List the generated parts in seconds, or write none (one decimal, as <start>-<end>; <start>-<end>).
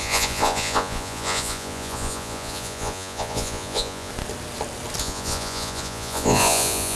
0.0-4.1; 5.0-7.0